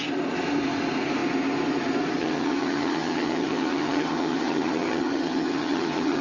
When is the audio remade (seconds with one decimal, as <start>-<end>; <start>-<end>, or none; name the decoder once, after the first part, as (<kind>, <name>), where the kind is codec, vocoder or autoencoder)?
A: 2.2-6.2 (vocoder, HiFi-GAN)

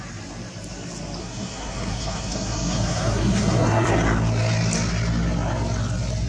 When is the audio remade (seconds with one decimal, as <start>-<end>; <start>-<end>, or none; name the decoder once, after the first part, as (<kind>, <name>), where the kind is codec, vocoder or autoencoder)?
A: 1.2-3.9 (codec, SNAC)

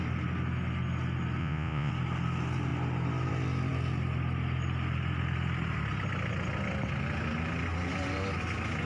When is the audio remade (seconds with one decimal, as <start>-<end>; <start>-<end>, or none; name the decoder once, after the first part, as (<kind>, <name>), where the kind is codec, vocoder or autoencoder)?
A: 1.4-1.9 (vocoder, Vocos)

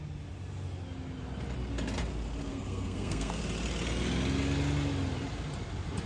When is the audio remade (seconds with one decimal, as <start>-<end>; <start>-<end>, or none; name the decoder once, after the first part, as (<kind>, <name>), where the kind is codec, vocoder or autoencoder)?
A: 2.5-3.4 (codec, SNAC)

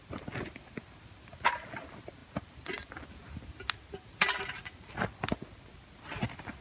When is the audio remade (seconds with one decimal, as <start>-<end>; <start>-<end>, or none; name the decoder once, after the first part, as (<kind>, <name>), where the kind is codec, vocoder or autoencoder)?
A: none

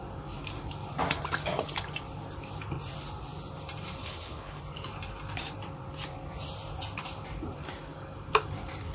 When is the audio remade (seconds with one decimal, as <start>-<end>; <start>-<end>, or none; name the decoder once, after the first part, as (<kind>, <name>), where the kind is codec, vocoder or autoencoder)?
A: 4.0-4.6 (codec, HILCodec)

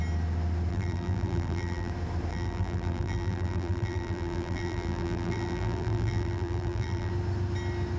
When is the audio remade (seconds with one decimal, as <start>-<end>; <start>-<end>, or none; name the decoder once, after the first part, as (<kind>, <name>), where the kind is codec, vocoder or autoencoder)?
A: 0.7-1.9 (vocoder, BigVGAN v2); 2.3-7.1

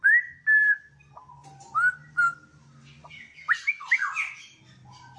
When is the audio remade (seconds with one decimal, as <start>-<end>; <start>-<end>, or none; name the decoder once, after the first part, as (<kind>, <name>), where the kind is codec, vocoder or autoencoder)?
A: none